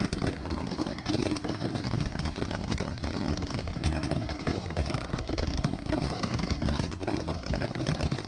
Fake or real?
fake